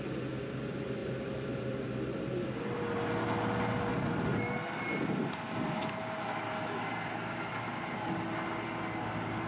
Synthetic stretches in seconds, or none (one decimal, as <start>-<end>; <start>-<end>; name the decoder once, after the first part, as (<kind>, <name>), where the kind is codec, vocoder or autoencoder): 1.0-1.8 (vocoder, BigVGAN v2)